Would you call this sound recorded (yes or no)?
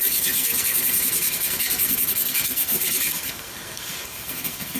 no